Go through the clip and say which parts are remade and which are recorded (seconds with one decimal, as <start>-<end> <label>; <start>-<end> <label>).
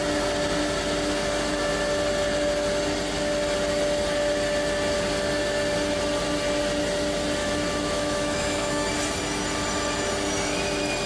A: 0.0-7.4 recorded; 7.4-8.9 remade; 8.9-11.1 recorded